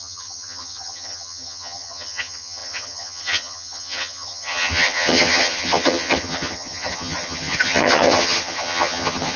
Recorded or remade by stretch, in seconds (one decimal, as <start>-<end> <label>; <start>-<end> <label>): 0.0-9.4 remade